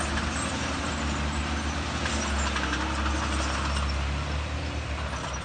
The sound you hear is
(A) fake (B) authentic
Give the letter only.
B